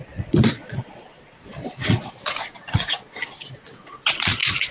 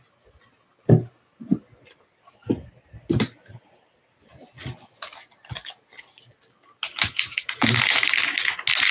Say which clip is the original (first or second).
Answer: second